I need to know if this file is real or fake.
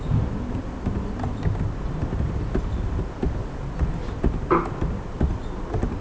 real